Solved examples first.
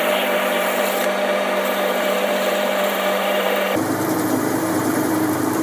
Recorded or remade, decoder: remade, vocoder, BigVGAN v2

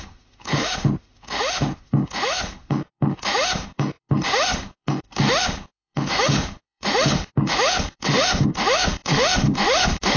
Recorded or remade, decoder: remade, autoencoder, DAC-VAE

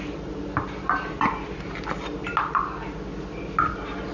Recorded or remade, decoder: recorded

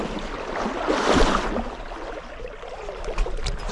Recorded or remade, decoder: recorded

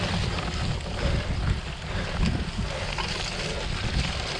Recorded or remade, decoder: recorded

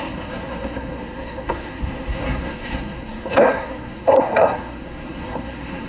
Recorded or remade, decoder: remade, codec, SNAC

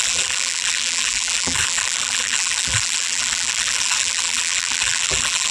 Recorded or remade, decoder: remade, vocoder, BigVGAN v2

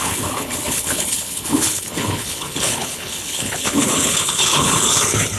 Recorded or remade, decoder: remade, codec, HILCodec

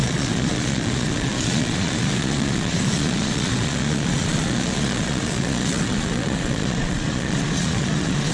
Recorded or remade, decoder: remade, vocoder, Vocos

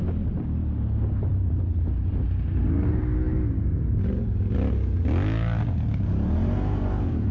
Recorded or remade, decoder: recorded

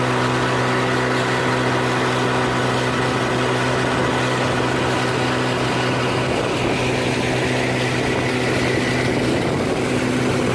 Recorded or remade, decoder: recorded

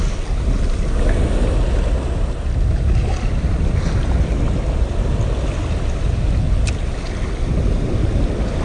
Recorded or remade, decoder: recorded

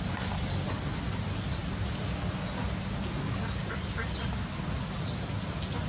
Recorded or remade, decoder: recorded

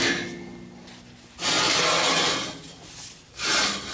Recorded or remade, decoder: recorded